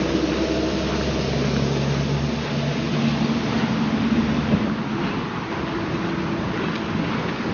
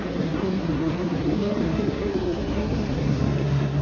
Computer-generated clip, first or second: second